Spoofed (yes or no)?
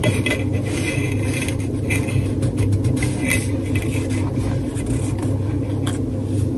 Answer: no